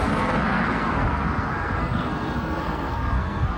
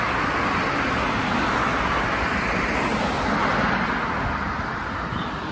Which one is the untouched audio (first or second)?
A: second